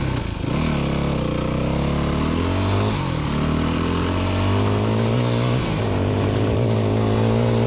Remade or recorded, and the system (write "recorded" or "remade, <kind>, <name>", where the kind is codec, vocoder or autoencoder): recorded